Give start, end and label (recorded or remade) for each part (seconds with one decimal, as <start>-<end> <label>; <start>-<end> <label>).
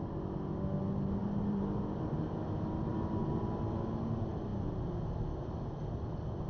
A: 0.0-1.2 recorded; 1.2-2.5 remade; 2.5-2.9 recorded; 2.9-4.0 remade; 4.0-6.5 recorded